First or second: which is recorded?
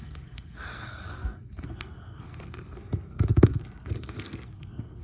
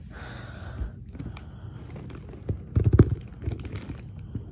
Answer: second